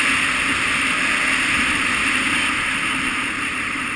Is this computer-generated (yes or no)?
no